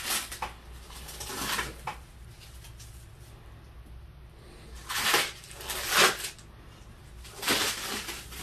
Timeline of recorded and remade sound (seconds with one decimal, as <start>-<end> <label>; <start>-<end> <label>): 0.0-1.9 recorded; 1.9-3.1 remade; 3.1-8.4 recorded